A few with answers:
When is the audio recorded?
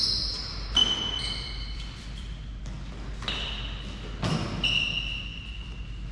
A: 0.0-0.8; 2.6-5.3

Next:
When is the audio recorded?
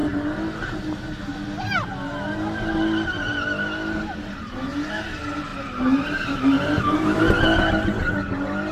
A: 0.0-5.5; 7.2-8.7